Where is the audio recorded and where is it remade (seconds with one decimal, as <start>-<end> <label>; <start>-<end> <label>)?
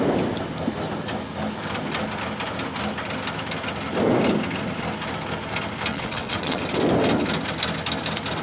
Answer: 0.0-5.9 recorded; 5.9-6.6 remade; 6.6-8.4 recorded